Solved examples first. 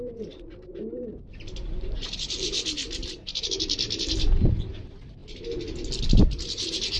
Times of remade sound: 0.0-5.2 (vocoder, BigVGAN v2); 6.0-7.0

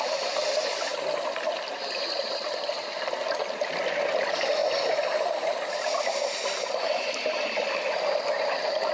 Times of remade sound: 0.0-0.9 (vocoder, BigVGAN v2); 3.8-4.6; 8.0-8.9

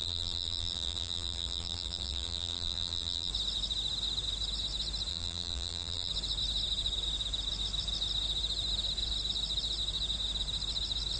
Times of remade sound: 0.0-3.3 (vocoder, BigVGAN v2); 5.1-6.1

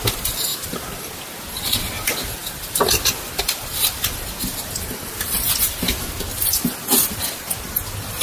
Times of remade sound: 2.4-5.5 (vocoder, BigVGAN v2); 6.3-7.4

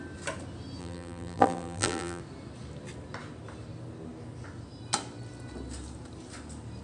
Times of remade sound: 0.8-2.2 (vocoder, BigVGAN v2)